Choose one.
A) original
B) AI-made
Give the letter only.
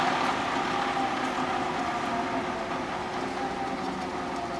A